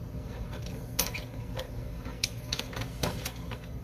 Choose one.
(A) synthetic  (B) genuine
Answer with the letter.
A